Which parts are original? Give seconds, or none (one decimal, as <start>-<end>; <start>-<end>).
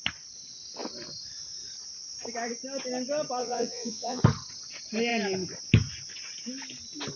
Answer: 0.0-3.4; 4.2-7.2